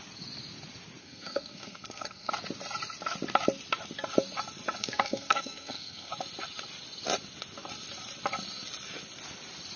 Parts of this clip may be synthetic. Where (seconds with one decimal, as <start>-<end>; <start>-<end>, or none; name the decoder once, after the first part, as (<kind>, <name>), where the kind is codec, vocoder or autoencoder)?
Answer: 1.0-2.3 (codec, SNAC); 4.8-6.1